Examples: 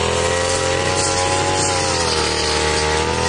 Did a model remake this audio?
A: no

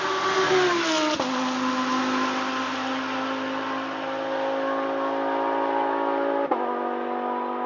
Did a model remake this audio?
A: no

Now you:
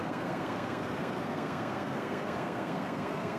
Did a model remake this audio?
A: yes